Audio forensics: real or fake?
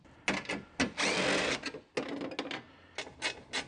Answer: real